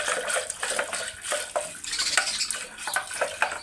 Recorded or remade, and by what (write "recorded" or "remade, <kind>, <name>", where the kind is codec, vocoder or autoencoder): recorded